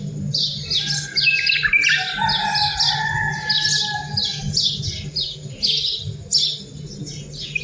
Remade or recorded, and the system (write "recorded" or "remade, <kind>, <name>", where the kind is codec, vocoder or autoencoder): recorded